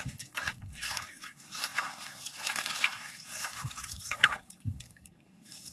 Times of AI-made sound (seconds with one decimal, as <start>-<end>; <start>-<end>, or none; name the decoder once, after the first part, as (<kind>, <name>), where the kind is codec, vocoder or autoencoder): 0.0-5.7 (codec, SNAC)